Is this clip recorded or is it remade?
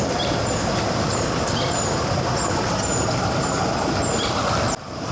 recorded